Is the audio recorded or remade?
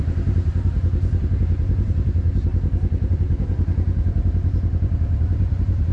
remade